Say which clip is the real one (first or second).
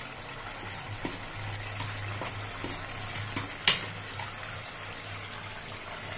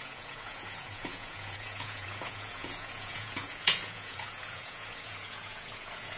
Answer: first